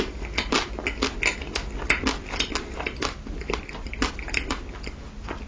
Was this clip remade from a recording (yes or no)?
no